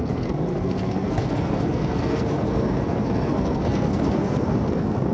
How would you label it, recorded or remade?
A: remade